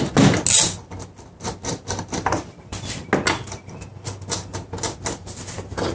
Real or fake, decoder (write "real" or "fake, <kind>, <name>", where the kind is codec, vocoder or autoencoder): real